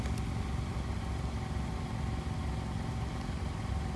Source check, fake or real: real